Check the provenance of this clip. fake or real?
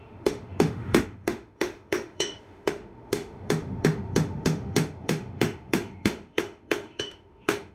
fake